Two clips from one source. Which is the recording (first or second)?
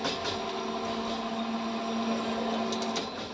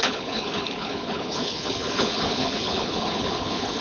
first